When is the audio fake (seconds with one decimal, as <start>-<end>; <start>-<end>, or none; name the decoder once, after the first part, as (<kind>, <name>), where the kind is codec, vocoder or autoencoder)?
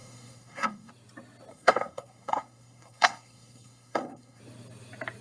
0.0-0.9 (codec, SNAC); 1.5-4.4